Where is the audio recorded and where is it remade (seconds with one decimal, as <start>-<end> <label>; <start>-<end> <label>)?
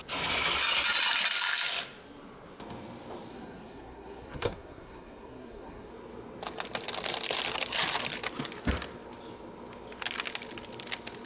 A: 0.0-3.3 recorded; 3.3-5.9 remade; 5.9-11.2 recorded